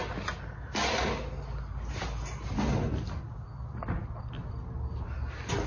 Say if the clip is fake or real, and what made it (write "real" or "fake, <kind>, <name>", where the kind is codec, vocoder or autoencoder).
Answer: real